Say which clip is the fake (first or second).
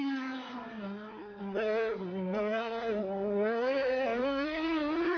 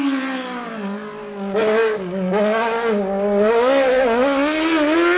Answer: first